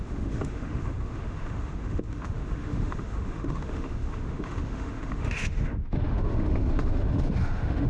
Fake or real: fake